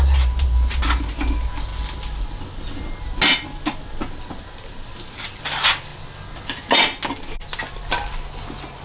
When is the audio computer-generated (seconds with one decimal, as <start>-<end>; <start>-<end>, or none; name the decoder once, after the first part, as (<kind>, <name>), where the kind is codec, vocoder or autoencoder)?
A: none